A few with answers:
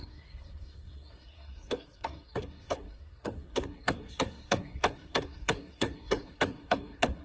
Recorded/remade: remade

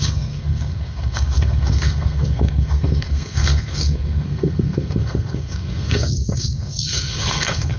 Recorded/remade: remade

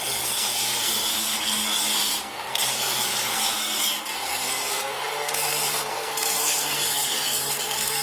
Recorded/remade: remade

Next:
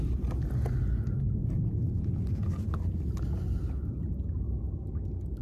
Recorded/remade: recorded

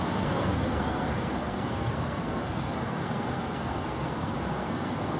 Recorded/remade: remade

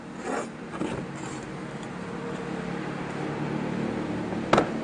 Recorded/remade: recorded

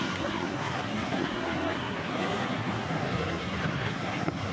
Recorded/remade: remade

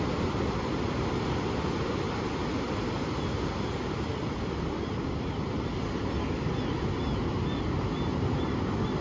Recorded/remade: recorded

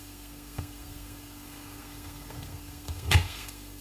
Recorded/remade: remade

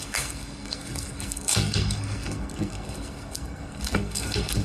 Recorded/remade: remade